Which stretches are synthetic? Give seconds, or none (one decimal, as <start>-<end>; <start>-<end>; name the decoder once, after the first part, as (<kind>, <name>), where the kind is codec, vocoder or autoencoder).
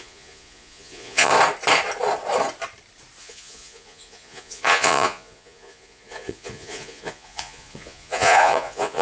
0.0-1.3 (vocoder, Vocos); 3.2-9.0